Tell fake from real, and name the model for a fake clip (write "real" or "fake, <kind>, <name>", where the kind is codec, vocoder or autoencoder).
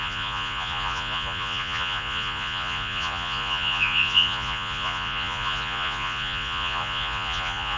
fake, vocoder, Vocos